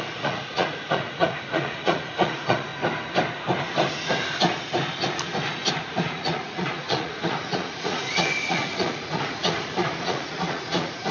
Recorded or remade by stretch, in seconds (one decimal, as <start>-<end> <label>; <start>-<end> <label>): 0.0-2.7 remade; 2.7-5.7 recorded; 5.7-11.1 remade